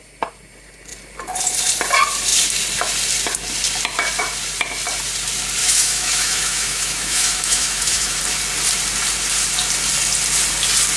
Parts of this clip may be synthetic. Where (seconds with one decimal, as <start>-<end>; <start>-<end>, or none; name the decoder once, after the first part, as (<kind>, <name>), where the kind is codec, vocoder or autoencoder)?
5.6-8.2 (autoencoder, DAC-VAE)